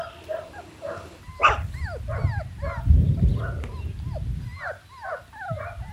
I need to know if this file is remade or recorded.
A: recorded